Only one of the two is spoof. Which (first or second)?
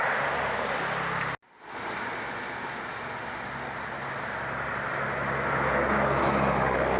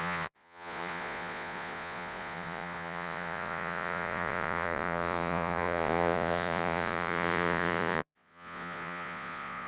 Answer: second